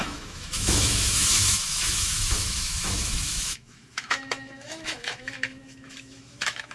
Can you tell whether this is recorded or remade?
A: remade